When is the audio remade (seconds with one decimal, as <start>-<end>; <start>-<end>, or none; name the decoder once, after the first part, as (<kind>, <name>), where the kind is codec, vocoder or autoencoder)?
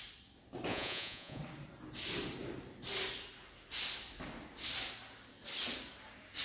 0.7-1.4 (vocoder, Vocos)